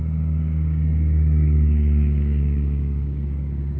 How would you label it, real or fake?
fake